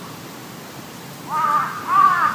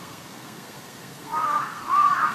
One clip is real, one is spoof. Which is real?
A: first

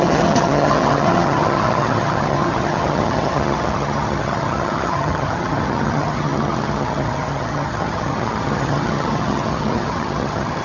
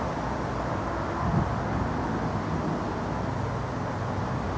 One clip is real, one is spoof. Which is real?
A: second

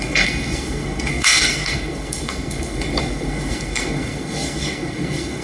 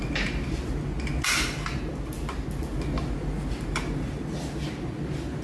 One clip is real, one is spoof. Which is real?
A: second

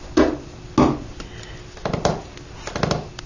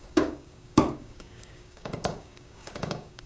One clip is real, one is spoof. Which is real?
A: first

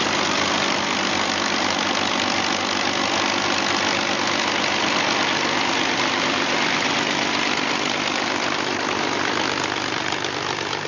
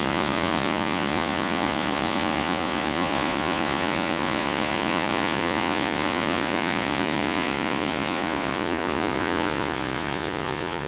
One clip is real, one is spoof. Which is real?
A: first